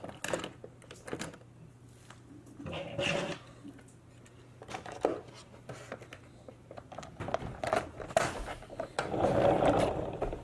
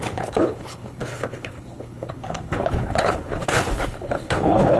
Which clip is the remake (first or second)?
second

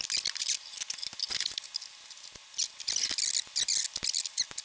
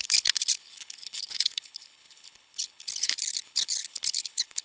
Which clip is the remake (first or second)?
second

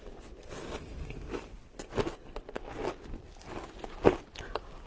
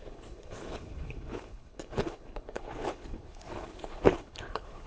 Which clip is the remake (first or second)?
second